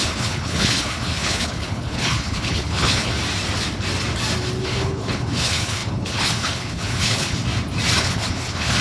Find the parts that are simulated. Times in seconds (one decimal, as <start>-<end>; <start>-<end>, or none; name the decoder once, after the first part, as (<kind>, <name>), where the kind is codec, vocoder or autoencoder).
0.0-3.1 (codec, HILCodec); 4.6-7.4; 8.0-8.8